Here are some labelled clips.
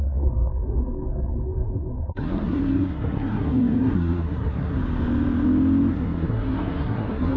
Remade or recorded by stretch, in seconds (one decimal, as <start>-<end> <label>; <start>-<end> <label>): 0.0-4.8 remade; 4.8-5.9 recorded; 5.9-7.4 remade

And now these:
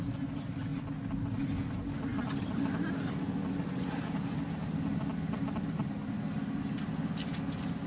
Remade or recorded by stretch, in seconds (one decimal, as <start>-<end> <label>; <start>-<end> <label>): 0.0-7.9 recorded

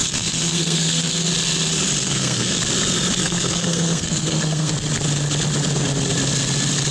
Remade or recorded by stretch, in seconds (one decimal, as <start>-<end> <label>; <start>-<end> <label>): 0.0-1.3 remade; 1.3-2.0 recorded; 2.0-2.6 remade; 2.6-3.2 recorded; 3.2-4.7 remade; 4.7-6.9 recorded

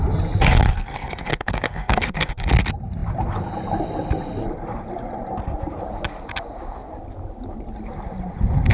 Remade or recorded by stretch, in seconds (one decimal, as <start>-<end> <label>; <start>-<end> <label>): 0.0-0.7 recorded; 0.7-2.3 remade; 2.3-8.7 recorded